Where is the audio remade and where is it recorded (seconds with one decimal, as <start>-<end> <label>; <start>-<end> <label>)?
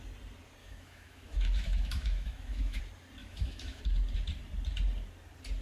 0.0-0.6 recorded; 0.6-2.8 remade; 2.8-3.2 recorded; 3.2-3.8 remade; 3.8-5.6 recorded